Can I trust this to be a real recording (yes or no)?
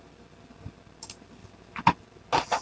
yes